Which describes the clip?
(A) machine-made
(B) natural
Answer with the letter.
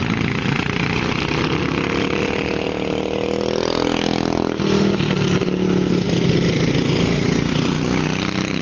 B